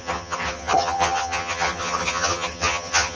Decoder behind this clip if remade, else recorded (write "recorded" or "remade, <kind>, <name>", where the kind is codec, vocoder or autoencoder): remade, vocoder, HiFi-GAN